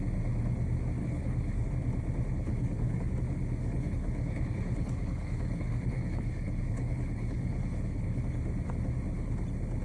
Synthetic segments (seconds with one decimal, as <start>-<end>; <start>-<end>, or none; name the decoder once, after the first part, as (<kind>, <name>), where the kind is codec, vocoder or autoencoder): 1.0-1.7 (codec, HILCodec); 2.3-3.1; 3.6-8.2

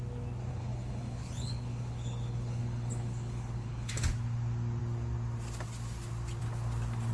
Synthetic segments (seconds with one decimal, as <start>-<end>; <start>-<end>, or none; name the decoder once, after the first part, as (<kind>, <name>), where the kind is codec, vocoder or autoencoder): 0.5-3.9 (codec, HILCodec)

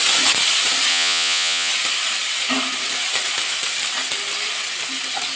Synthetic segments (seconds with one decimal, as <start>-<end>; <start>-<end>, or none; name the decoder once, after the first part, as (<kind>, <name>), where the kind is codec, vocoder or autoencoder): 0.9-1.7 (vocoder, Vocos)